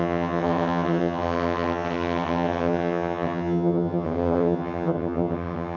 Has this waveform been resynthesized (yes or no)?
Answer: yes